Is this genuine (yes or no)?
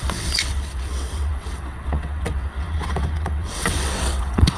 no